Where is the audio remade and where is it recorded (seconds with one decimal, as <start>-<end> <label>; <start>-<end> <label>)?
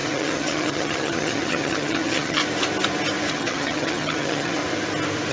0.0-2.4 remade; 2.4-3.3 recorded; 3.3-4.6 remade; 4.6-5.3 recorded